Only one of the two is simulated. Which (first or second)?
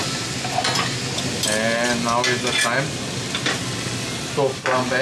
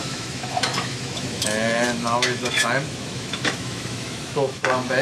second